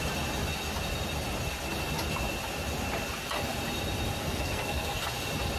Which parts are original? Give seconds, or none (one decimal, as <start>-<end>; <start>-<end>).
0.0-4.2; 5.0-5.6

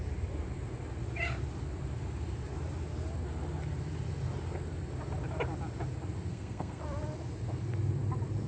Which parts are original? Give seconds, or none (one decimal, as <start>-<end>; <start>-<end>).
0.0-6.3; 6.8-8.5